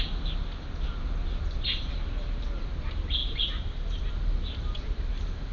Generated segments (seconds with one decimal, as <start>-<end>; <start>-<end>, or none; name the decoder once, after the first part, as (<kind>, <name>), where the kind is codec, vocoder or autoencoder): none